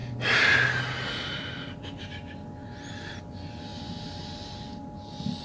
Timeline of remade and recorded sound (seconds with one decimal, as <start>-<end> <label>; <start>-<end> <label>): 0.0-5.4 recorded